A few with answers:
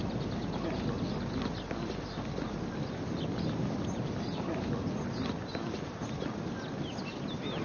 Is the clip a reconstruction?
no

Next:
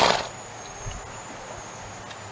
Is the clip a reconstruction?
no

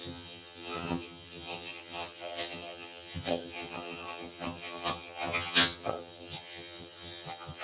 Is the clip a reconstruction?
yes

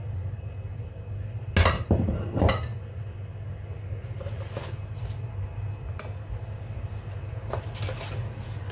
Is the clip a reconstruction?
no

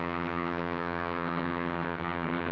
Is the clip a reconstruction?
yes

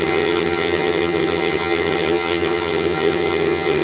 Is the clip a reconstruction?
yes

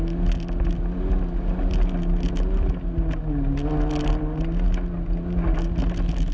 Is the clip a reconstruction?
no